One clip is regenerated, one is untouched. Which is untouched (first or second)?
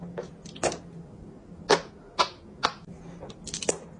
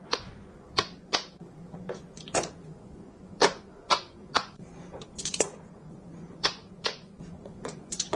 first